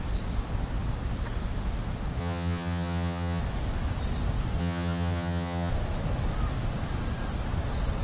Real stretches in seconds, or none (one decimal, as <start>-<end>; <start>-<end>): 0.0-2.2; 3.4-4.6; 5.7-8.0

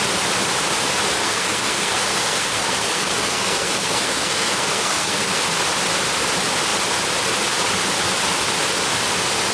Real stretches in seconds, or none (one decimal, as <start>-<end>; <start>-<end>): 0.0-1.2; 5.4-9.5